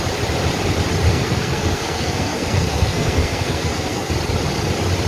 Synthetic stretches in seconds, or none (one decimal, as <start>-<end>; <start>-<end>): 1.1-4.1